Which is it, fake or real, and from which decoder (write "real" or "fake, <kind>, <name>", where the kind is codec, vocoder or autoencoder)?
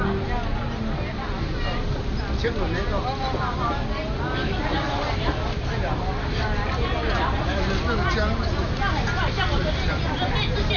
real